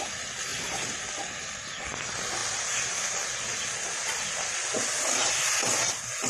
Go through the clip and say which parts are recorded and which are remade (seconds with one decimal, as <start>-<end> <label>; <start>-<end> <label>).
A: 0.0-6.3 recorded